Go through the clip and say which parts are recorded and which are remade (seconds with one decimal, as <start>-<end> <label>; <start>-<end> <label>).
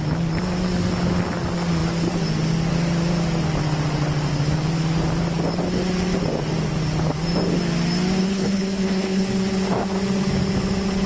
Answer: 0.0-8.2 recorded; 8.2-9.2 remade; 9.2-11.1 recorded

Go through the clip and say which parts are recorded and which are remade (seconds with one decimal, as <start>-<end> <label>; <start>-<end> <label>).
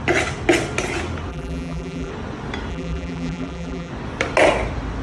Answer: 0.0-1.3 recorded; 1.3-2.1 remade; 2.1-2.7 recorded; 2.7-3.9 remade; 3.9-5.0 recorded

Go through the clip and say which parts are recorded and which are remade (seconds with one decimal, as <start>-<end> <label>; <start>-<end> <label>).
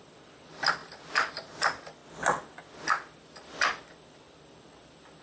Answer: 0.0-0.8 remade; 0.8-1.3 recorded; 1.3-2.0 remade; 2.0-5.2 recorded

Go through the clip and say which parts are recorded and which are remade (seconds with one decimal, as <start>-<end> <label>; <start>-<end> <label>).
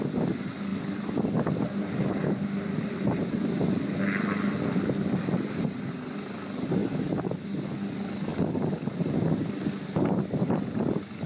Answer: 0.0-6.8 recorded; 6.8-7.4 remade; 7.4-11.3 recorded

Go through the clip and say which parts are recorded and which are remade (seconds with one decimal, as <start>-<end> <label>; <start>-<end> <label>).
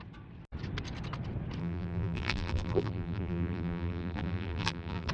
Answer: 0.0-1.6 recorded; 1.6-5.1 remade